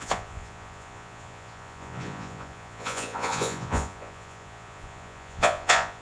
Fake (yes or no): yes